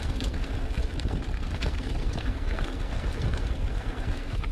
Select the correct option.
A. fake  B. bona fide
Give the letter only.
A